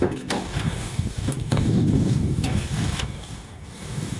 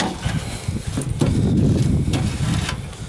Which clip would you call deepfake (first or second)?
first